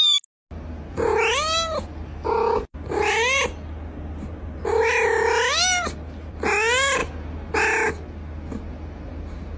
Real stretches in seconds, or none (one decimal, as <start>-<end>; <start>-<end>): 0.0-9.6